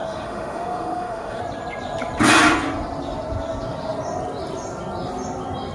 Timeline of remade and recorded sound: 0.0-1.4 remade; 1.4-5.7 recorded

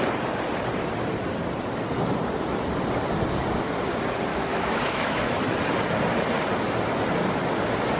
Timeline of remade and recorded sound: 0.0-4.3 recorded; 4.3-5.3 remade; 5.3-8.0 recorded